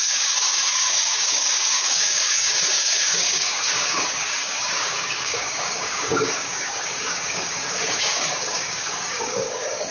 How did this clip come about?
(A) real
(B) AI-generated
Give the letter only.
B